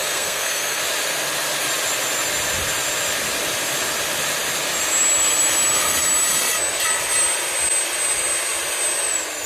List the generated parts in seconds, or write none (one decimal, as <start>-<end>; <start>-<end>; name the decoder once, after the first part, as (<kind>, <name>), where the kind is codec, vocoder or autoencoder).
0.0-0.8 (codec, SNAC)